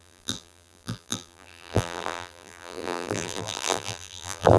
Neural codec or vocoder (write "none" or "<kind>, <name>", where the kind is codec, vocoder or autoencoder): vocoder, BigVGAN v2